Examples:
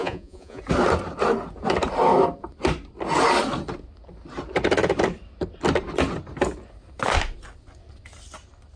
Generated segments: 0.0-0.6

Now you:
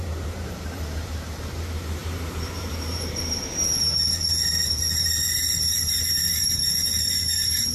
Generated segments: 0.0-7.7

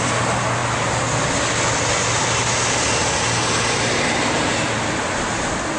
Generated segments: none

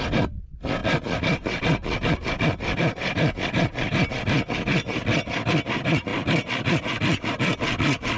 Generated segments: none

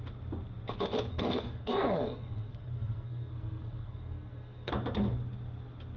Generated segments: 1.1-4.7

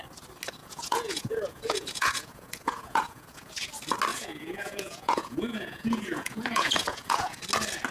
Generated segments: 0.6-3.5; 4.1-7.4

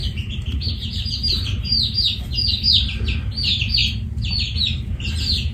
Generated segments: 0.0-2.2